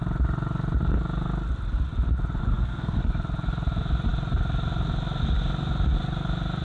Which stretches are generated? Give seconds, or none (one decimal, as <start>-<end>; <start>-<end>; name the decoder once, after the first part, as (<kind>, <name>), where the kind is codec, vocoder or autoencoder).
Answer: 2.4-3.0 (codec, SNAC)